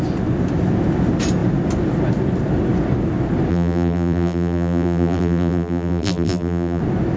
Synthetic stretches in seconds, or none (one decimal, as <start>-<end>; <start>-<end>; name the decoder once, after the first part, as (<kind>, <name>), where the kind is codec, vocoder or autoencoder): 3.5-6.8 (vocoder, BigVGAN v2)